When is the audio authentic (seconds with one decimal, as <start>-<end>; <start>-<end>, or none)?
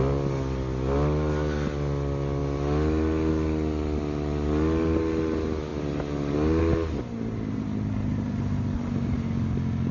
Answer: 0.0-9.9